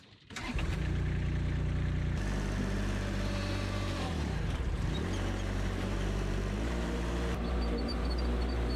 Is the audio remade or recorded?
remade